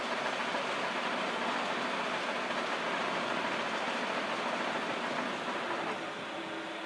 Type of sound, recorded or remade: recorded